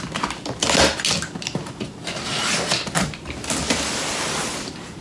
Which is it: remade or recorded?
recorded